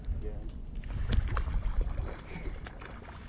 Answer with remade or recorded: recorded